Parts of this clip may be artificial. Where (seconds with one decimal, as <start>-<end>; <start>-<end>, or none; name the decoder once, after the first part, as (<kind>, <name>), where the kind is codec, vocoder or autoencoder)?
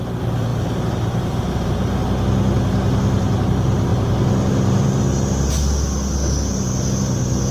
0.5-1.7 (vocoder, BigVGAN v2); 3.9-5.0